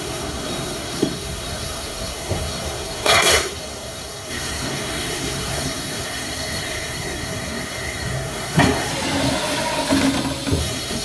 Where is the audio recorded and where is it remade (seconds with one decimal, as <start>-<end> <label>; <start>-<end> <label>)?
0.0-8.9 remade; 8.9-10.6 recorded; 10.6-11.0 remade